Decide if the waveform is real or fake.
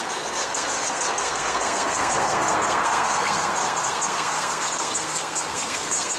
fake